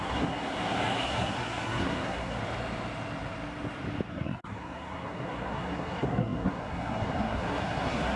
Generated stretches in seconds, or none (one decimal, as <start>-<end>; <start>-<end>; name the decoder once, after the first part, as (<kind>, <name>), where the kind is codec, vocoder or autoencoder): 0.0-2.4 (codec, SNAC); 4.1-8.2